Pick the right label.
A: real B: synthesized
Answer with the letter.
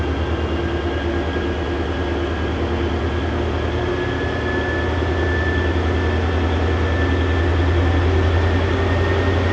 A